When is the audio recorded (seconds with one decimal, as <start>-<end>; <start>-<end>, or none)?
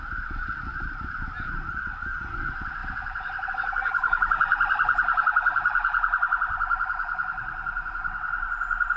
0.0-9.0